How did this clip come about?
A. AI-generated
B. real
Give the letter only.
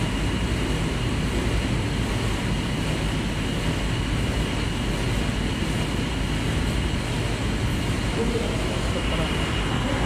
B